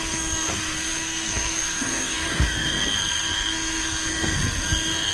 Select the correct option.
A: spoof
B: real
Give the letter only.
A